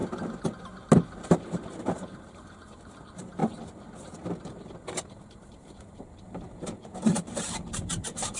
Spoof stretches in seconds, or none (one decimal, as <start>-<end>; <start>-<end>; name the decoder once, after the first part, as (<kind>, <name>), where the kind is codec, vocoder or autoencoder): 1.3-3.4 (vocoder, BigVGAN v2); 5.1-8.4